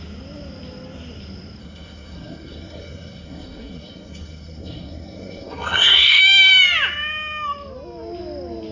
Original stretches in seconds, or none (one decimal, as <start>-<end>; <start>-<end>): 0.0-1.6; 6.2-8.7